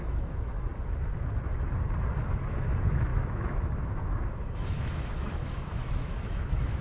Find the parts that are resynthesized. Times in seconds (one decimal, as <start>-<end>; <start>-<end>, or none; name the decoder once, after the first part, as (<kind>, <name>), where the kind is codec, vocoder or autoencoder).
0.0-0.7 (autoencoder, DAC-VAE); 2.5-6.8